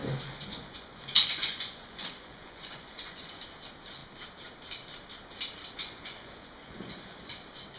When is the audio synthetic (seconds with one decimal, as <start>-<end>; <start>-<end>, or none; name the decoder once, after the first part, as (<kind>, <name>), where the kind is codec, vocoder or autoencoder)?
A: 0.0-3.4 (vocoder, Vocos); 5.8-7.3